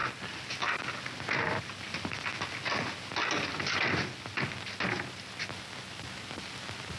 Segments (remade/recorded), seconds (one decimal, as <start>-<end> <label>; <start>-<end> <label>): 0.0-7.0 recorded